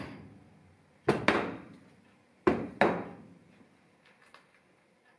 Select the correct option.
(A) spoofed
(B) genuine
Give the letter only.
B